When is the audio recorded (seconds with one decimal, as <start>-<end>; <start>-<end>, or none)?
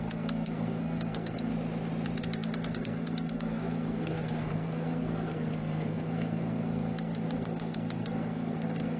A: 1.5-2.2